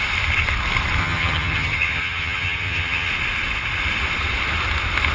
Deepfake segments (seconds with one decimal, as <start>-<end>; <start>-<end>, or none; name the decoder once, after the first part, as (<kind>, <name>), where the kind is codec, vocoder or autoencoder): 1.0-3.1 (vocoder, HiFi-GAN)